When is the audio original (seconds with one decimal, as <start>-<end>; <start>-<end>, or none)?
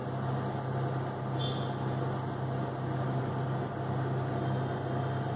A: 0.0-5.4